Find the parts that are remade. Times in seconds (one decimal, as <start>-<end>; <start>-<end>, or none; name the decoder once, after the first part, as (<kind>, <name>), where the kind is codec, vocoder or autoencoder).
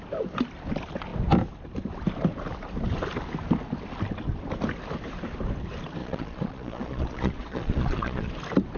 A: 6.0-8.3 (vocoder, Vocos)